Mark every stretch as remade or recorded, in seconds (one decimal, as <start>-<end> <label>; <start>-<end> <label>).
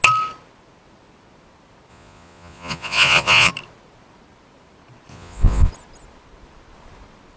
0.0-1.9 recorded; 1.9-3.5 remade; 3.5-5.1 recorded; 5.1-5.7 remade; 5.7-7.4 recorded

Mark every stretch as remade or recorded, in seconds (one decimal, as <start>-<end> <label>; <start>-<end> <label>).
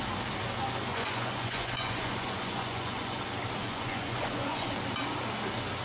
0.0-0.9 recorded; 0.9-3.2 remade; 3.2-3.6 recorded; 3.6-4.7 remade; 4.7-5.8 recorded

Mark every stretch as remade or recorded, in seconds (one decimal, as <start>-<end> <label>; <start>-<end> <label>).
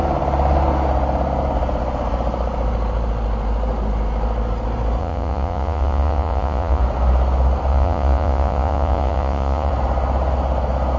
0.0-5.0 recorded; 5.0-6.8 remade; 6.8-7.7 recorded; 7.7-9.7 remade; 9.7-11.0 recorded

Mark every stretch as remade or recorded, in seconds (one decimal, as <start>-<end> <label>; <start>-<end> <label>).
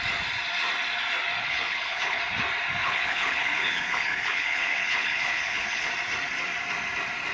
0.0-1.4 recorded; 1.4-2.2 remade; 2.2-2.8 recorded; 2.8-5.9 remade; 5.9-7.3 recorded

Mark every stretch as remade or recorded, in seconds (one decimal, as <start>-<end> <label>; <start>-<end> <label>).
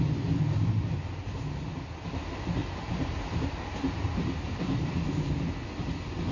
0.0-2.6 recorded; 2.6-5.5 remade; 5.5-6.3 recorded